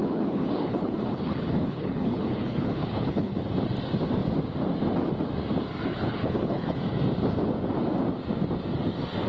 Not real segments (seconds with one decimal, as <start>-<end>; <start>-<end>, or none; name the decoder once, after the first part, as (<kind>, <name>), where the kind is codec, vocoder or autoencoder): 0.0-3.4 (codec, HILCodec); 5.9-6.8